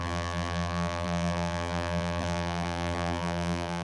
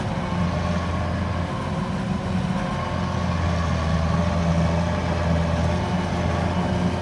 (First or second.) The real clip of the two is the second